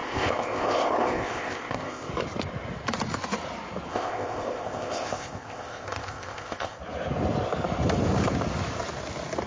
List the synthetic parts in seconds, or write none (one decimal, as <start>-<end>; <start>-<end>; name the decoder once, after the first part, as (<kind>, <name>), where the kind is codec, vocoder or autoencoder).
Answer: 0.0-2.1 (codec, ZipCodec); 3.9-6.8